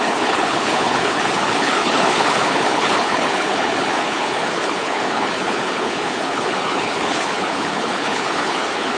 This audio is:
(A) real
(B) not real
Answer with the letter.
B